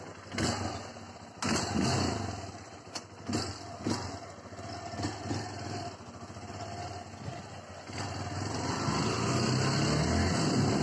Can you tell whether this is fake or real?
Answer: real